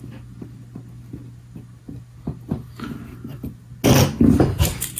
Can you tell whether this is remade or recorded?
recorded